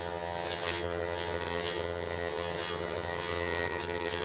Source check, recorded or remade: remade